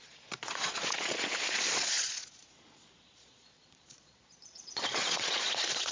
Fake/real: fake